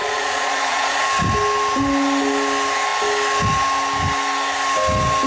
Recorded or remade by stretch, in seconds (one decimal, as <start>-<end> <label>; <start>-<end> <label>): 0.0-1.0 remade; 1.0-5.3 recorded